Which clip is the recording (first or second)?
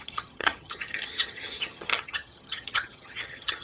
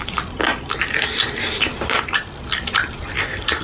second